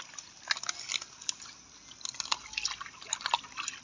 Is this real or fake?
real